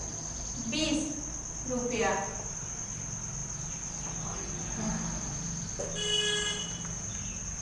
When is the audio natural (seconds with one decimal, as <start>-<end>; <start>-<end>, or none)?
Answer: 0.0-7.6